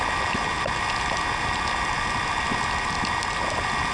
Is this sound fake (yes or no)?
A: no